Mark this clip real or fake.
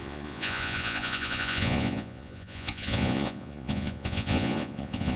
fake